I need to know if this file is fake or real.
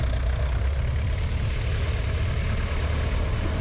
real